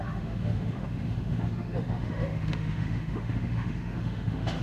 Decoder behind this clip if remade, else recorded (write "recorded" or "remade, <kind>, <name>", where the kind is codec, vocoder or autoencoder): remade, autoencoder, DAC-VAE